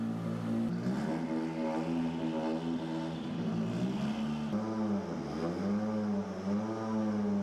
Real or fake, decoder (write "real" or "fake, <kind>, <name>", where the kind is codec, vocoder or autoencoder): real